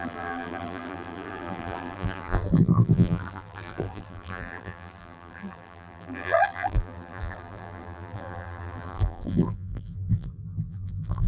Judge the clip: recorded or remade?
remade